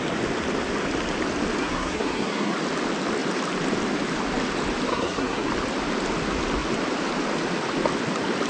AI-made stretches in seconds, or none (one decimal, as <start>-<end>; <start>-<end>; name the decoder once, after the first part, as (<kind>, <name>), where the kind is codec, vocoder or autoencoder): 1.6-2.5 (codec, SNAC); 4.9-5.5